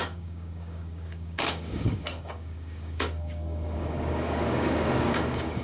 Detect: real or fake fake